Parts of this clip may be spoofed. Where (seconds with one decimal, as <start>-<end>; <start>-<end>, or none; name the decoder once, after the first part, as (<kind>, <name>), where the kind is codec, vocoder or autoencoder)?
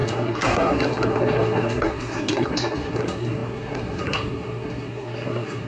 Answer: 0.0-5.7 (codec, SNAC)